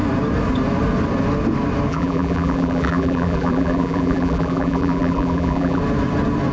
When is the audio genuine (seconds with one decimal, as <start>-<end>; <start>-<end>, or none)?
0.0-1.9; 5.8-6.5